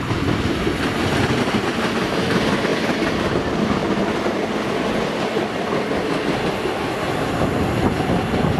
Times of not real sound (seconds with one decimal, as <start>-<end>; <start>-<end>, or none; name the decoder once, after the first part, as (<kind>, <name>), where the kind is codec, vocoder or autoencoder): 3.8-4.7 (vocoder, BigVGAN v2)